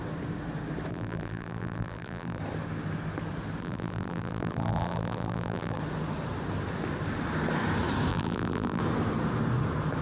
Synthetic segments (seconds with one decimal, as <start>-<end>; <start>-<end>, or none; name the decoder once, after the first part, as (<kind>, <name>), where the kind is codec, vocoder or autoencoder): 0.9-2.4 (vocoder, BigVGAN v2); 3.6-5.8; 8.1-8.8